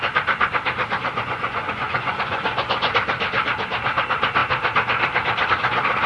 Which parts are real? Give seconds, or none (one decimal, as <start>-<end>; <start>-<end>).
0.0-1.2; 2.9-6.1